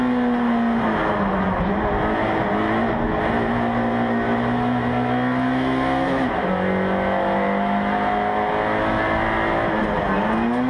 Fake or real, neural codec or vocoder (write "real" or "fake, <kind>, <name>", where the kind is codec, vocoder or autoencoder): real